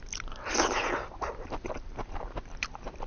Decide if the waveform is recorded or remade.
recorded